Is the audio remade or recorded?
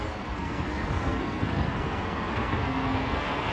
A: remade